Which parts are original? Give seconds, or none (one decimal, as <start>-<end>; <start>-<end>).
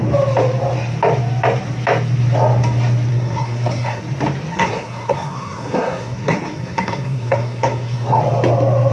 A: 0.0-3.1; 4.0-4.5; 8.2-8.9